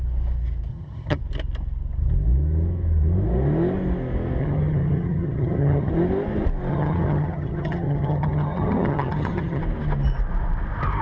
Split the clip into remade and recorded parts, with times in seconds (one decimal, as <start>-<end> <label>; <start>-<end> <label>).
0.0-0.7 recorded; 0.7-1.2 remade; 1.2-4.4 recorded; 4.4-5.9 remade; 5.9-6.7 recorded; 6.7-9.6 remade; 9.6-11.0 recorded